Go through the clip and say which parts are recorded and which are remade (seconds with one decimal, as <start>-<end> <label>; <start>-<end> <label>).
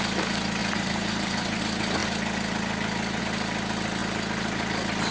0.0-0.6 recorded; 0.6-1.6 remade; 1.6-5.1 recorded